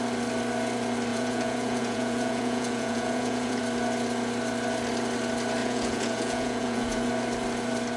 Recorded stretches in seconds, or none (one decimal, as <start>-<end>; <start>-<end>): 0.0-1.1; 3.6-5.6; 7.1-8.0